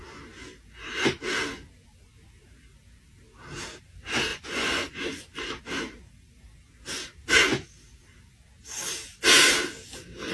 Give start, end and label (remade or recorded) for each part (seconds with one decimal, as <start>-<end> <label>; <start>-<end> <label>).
0.0-4.3 recorded; 4.3-5.2 remade; 5.2-10.3 recorded